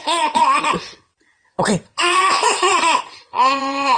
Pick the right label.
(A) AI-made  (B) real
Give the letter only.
A